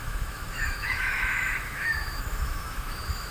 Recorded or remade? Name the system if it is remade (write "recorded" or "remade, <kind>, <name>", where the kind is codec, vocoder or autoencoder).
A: remade, autoencoder, DAC-VAE